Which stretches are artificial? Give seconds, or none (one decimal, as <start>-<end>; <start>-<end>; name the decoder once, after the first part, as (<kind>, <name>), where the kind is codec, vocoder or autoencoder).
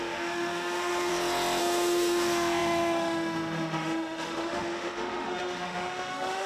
0.0-1.1 (autoencoder, DAC-VAE); 1.6-6.5